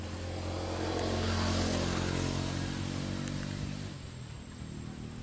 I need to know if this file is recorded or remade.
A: recorded